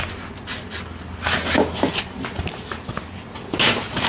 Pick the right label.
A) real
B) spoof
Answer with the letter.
A